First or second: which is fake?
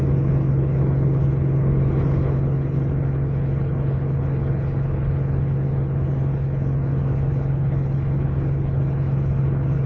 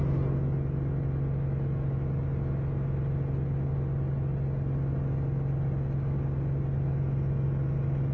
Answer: first